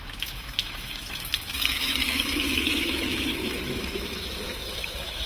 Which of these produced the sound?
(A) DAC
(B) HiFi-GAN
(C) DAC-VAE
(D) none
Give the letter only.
C